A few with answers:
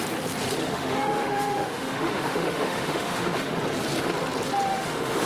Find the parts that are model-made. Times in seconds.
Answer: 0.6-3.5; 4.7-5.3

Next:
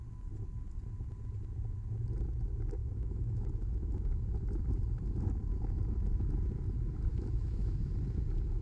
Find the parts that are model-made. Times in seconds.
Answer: 2.8-3.5; 7.1-7.9

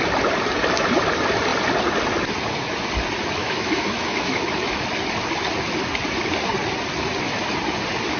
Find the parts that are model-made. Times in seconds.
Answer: 3.4-4.8

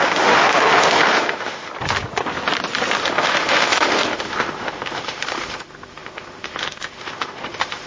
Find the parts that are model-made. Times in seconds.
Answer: 0.0-1.7; 3.0-7.9